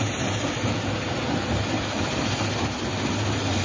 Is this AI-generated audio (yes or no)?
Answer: no